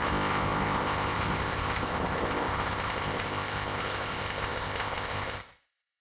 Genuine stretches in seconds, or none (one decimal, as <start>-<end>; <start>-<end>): none